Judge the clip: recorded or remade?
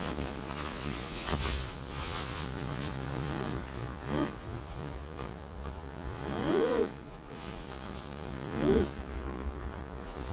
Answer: remade